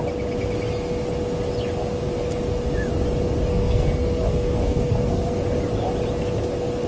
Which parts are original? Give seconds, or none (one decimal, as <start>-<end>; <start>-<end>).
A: 0.0-3.5; 5.4-6.9